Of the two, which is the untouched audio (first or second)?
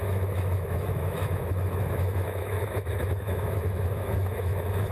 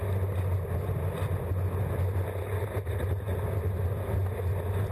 second